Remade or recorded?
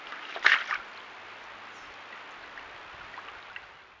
recorded